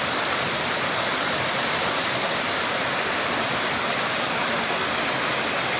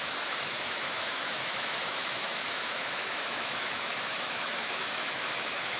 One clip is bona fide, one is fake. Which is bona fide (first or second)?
first